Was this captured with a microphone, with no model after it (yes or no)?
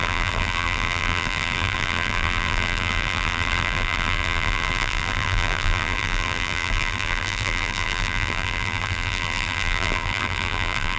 no